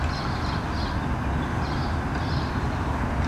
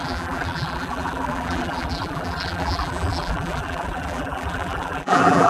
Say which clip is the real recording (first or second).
first